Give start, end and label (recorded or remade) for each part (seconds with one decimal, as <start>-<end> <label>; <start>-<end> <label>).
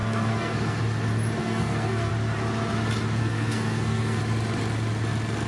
0.0-0.8 remade; 0.8-1.4 recorded; 1.4-2.1 remade; 2.1-3.2 recorded; 3.2-4.2 remade; 4.2-5.5 recorded